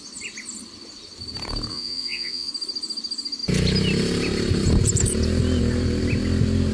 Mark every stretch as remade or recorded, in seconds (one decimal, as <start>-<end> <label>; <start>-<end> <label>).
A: 0.0-1.7 recorded; 1.7-2.5 remade; 2.5-6.7 recorded